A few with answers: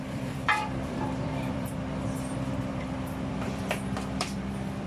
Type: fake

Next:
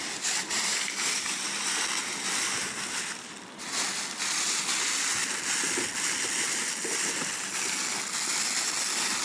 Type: real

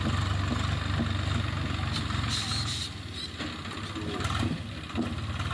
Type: real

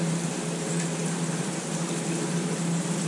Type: real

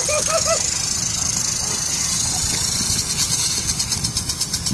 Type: real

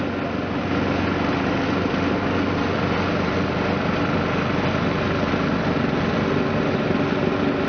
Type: real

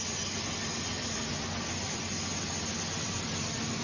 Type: real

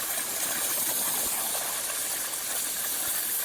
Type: real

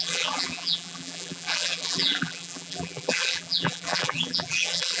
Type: fake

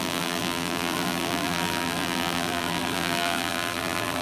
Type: fake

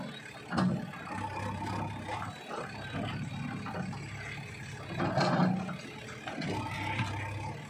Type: real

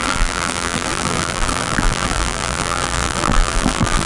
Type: fake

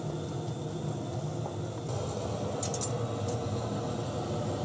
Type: real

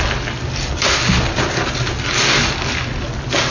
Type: real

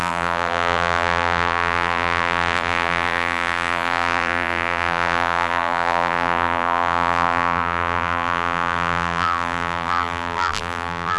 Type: fake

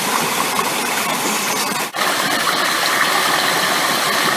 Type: real